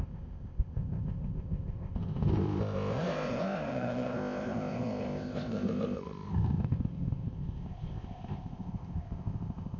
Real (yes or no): no